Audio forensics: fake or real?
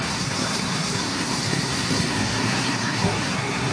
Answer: fake